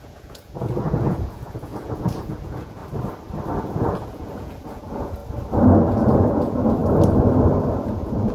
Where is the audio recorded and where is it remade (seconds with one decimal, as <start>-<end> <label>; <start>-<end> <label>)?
0.0-2.8 remade; 2.8-3.6 recorded; 3.6-5.2 remade; 5.2-5.9 recorded; 5.9-6.8 remade; 6.8-7.6 recorded; 7.6-8.3 remade